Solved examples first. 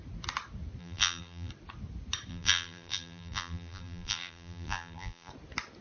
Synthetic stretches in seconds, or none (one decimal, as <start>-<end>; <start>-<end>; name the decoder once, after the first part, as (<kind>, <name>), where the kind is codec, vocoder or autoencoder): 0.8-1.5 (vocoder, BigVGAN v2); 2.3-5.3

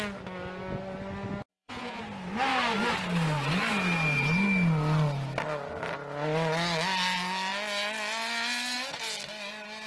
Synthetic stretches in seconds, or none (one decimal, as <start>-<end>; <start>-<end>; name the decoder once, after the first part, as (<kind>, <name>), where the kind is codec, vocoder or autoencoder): 1.5-2.0 (vocoder, Vocos)

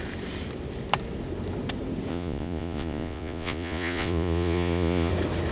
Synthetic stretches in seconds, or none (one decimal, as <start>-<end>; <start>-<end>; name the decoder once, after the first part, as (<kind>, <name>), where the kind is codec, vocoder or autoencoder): 2.1-5.1 (vocoder, Vocos)